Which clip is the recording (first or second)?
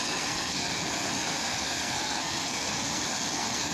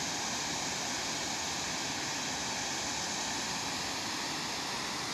second